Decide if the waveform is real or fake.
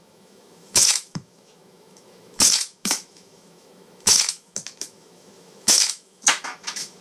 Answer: fake